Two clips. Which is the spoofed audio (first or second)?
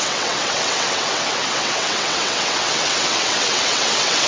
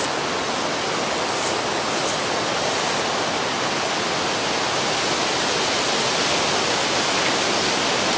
first